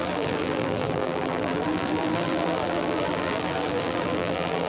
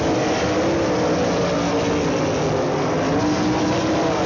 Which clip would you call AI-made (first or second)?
first